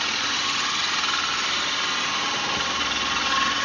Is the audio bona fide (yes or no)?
yes